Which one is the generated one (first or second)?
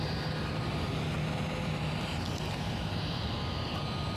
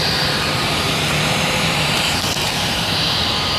second